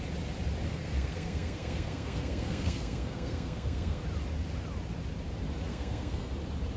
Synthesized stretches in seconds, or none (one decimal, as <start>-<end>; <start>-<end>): 0.7-4.0; 5.7-6.3